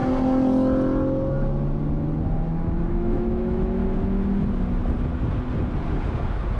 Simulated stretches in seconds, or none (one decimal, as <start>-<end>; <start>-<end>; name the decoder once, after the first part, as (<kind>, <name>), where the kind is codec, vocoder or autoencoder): 2.9-3.8 (autoencoder, DAC-VAE)